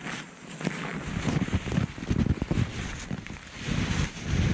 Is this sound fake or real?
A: real